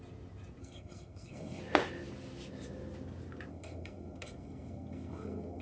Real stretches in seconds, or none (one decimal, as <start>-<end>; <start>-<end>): 0.0-0.6; 1.6-3.5

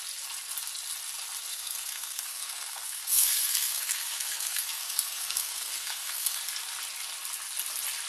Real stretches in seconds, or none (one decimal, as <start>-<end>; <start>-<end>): 0.0-1.5; 6.4-8.1

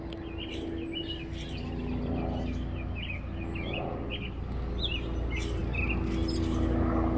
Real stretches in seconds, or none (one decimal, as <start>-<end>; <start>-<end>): 0.0-7.2